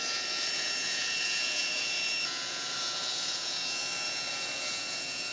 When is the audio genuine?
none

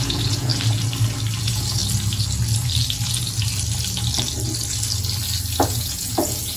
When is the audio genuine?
0.5-1.4; 1.8-5.7